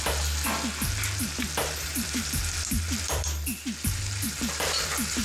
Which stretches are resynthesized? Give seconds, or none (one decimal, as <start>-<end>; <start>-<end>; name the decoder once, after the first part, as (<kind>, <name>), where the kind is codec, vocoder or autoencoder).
1.9-5.2 (vocoder, BigVGAN v2)